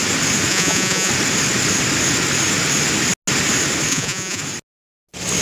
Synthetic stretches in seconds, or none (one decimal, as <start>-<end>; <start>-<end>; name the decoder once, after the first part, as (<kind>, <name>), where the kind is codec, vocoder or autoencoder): 0.5-1.1 (vocoder, Vocos); 3.9-4.4